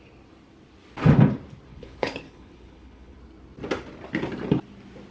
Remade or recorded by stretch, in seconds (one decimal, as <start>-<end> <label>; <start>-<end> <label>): 0.0-1.7 recorded; 1.7-3.2 remade; 3.2-5.1 recorded